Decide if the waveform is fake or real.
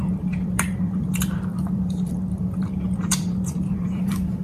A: fake